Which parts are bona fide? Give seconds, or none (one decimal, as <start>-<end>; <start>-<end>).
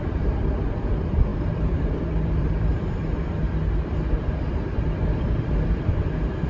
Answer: none